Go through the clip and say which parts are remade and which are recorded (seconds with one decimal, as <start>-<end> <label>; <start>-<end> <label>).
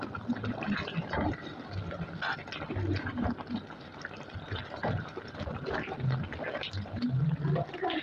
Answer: 0.0-8.0 recorded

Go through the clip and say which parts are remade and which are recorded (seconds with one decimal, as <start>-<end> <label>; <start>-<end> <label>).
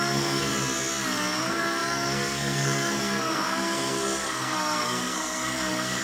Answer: 0.0-0.5 remade; 0.5-1.4 recorded; 1.4-6.0 remade